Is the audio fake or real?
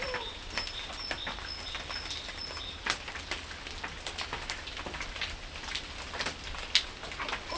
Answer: real